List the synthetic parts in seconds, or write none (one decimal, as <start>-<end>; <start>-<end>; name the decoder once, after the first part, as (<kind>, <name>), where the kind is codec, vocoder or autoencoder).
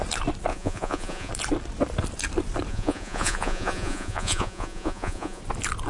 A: 0.5-1.3 (vocoder, Vocos); 2.7-5.4